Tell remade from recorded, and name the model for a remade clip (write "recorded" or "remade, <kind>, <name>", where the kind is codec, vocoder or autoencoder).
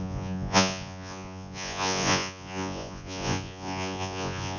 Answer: remade, vocoder, Vocos